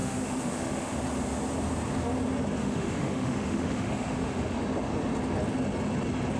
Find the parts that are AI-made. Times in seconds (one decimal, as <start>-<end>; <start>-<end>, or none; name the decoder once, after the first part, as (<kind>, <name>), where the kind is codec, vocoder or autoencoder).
0.0-1.0 (autoencoder, DAC-VAE); 2.6-4.6